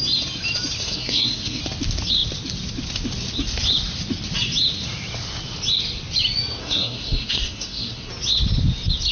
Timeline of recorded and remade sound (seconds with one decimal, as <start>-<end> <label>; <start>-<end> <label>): 0.0-0.8 recorded; 0.8-1.6 remade; 1.6-6.6 recorded; 6.6-8.1 remade; 8.1-9.1 recorded